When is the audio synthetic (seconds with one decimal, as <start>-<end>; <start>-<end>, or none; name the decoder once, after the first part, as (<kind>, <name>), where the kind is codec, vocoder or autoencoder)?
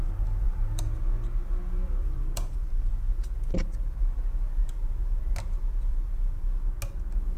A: 0.0-0.8 (vocoder, BigVGAN v2); 2.0-2.9; 4.6-5.2; 5.9-6.5